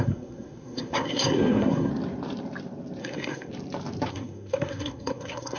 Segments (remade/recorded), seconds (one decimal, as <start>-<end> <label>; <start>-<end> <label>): 0.0-1.9 remade; 1.9-3.0 recorded; 3.0-3.5 remade; 3.5-4.1 recorded; 4.1-5.6 remade